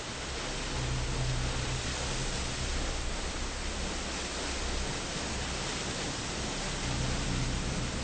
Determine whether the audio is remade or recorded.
recorded